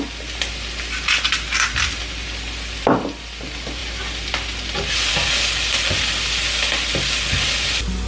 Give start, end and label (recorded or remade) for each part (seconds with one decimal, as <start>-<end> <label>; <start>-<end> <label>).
0.0-8.1 recorded